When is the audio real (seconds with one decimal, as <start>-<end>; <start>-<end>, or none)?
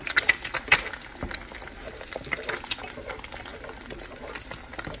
0.0-3.5; 4.3-5.0